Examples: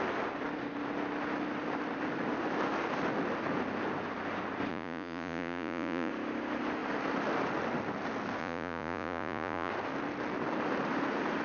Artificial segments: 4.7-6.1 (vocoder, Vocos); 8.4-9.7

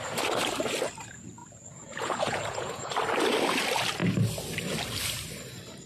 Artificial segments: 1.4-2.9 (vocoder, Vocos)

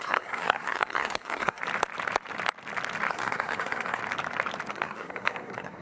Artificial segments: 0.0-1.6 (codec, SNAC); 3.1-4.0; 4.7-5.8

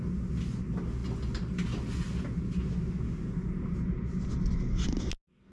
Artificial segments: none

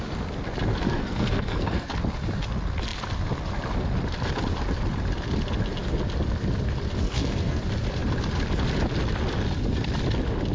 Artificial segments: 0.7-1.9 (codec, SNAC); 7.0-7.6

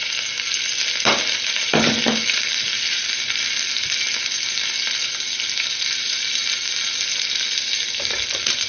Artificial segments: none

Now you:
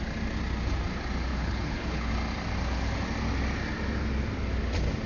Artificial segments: 1.3-2.1 (codec, HILCodec)